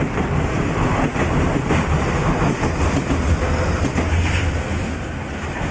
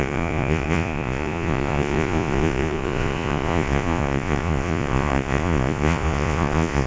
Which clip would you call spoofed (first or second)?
second